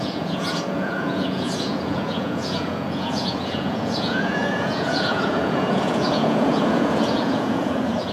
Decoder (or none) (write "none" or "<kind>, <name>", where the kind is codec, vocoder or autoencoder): vocoder, Vocos